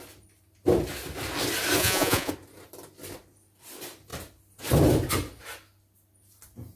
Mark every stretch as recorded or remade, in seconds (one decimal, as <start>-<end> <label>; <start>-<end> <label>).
0.0-1.8 recorded; 1.8-2.3 remade; 2.3-6.8 recorded